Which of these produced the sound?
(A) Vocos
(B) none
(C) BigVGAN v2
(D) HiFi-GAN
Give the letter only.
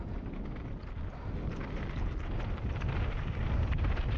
B